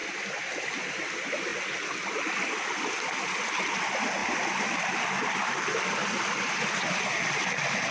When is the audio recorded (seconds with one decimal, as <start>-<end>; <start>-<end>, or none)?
0.0-7.9